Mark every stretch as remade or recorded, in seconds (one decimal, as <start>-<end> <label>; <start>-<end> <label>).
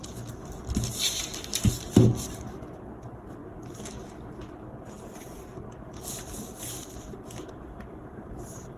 0.0-8.8 recorded